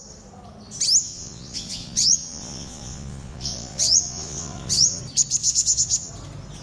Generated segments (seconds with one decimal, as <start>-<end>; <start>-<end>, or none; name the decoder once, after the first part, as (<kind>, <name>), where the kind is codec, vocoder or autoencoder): 1.0-5.0 (vocoder, Vocos); 5.4-6.1